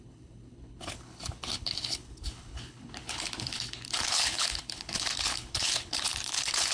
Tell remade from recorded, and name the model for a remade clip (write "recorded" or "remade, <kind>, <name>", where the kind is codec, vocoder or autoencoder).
remade, codec, HILCodec